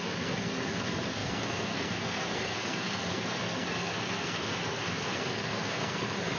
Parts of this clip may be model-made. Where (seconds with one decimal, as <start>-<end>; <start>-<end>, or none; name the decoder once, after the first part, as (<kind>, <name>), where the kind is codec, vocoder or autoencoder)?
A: 0.0-6.4 (codec, SNAC)